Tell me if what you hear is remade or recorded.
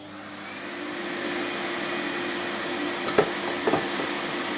recorded